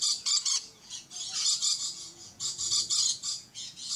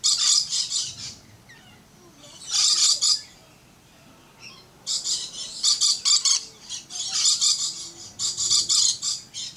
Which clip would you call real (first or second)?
second